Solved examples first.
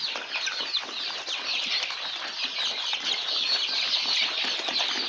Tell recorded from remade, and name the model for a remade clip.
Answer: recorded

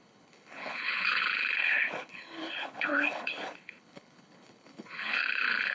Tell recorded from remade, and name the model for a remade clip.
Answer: remade, codec, HILCodec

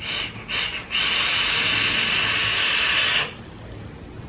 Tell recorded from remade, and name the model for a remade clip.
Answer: recorded